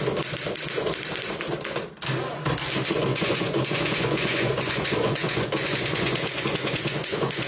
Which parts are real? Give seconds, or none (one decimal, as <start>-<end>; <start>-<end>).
0.0-3.1